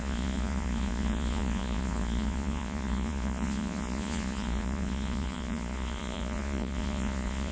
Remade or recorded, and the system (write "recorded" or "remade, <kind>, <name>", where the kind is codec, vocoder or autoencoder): remade, vocoder, Vocos